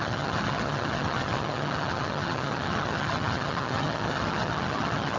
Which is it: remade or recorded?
remade